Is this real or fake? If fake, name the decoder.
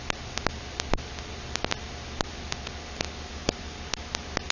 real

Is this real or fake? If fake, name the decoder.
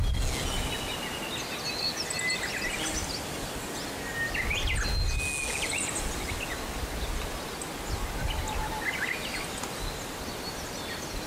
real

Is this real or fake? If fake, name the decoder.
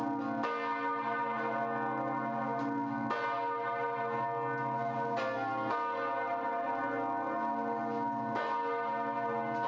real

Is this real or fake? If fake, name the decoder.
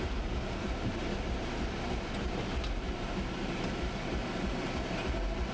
fake, vocoder, BigVGAN v2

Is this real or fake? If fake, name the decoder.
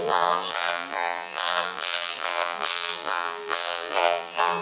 fake, vocoder, BigVGAN v2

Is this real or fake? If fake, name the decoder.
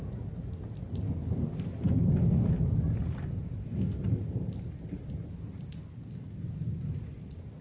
real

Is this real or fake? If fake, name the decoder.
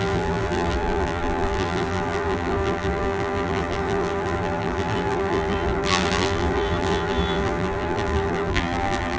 fake, vocoder, BigVGAN v2